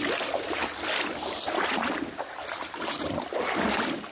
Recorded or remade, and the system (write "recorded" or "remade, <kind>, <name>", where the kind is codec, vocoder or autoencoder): recorded